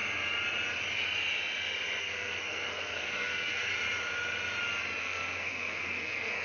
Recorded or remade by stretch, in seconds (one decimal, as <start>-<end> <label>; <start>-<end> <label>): 0.0-2.0 recorded; 2.0-3.7 remade; 3.7-5.0 recorded; 5.0-6.4 remade